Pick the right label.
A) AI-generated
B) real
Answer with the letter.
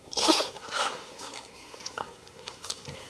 A